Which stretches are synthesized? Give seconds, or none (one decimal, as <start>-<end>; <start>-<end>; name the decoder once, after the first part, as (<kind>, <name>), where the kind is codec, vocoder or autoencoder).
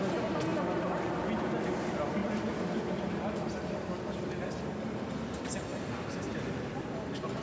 2.2-5.0 (vocoder, BigVGAN v2); 5.7-6.8